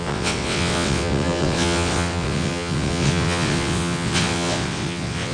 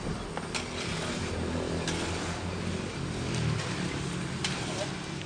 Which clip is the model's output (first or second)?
first